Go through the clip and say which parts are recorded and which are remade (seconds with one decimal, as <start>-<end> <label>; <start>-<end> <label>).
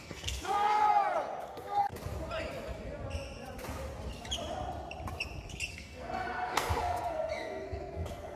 0.0-0.8 remade; 0.8-1.4 recorded; 1.4-1.9 remade; 1.9-5.7 recorded; 5.7-8.4 remade